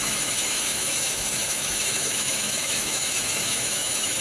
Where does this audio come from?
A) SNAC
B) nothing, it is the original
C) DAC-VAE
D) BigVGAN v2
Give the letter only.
C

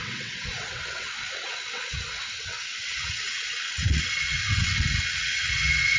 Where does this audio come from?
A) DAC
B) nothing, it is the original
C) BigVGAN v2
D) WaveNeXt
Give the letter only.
D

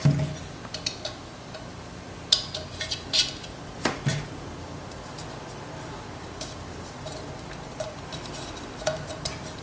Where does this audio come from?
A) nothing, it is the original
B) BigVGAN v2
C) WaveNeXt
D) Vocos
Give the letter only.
B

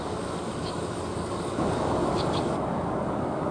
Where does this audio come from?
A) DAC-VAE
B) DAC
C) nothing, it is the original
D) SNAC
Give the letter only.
B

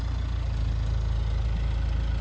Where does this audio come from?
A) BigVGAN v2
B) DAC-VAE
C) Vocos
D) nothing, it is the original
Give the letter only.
D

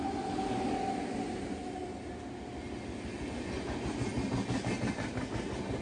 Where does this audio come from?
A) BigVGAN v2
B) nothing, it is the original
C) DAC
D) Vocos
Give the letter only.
B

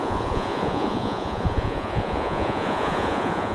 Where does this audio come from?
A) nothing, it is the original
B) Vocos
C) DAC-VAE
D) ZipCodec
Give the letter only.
B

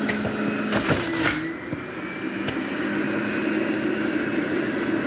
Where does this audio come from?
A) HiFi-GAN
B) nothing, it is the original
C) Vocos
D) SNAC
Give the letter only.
B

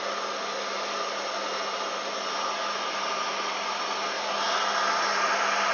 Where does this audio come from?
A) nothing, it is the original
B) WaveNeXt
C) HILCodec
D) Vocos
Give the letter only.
A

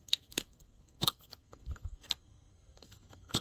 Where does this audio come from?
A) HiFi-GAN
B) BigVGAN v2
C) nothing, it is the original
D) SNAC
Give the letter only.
D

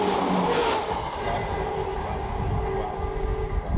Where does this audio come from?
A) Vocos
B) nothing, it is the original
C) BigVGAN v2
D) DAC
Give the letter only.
B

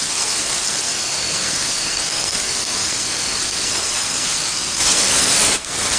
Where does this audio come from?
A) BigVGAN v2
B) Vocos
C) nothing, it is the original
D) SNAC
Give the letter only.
D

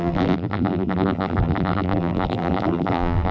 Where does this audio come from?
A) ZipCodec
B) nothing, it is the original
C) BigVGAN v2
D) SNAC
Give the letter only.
C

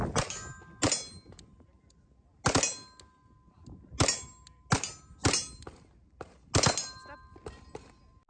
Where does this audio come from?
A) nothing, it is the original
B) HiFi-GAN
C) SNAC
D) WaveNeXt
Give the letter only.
A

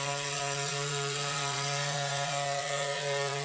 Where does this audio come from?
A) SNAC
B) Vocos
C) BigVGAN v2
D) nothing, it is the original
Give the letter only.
B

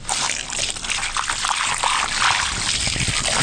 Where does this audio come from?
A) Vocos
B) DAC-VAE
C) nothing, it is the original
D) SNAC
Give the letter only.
C